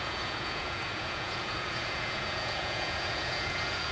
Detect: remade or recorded remade